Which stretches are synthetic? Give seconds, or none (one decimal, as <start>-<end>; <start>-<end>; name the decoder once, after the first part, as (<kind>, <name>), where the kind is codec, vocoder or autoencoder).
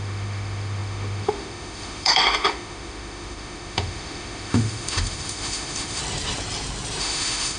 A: 0.0-6.0 (autoencoder, DAC-VAE); 7.0-7.6